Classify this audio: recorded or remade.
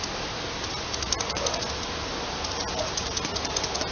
recorded